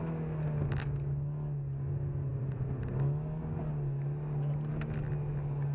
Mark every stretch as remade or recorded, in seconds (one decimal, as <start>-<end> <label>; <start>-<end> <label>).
0.0-2.3 recorded; 2.3-2.9 remade; 2.9-5.7 recorded